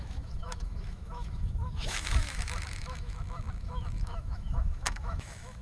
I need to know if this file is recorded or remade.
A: remade